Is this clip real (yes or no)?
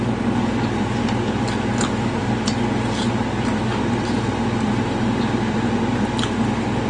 yes